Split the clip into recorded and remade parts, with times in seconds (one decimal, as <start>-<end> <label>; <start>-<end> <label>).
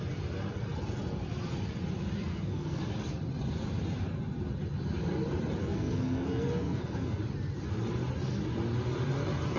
0.0-2.3 recorded; 2.3-2.8 remade; 2.8-5.6 recorded; 5.6-7.2 remade; 7.2-9.6 recorded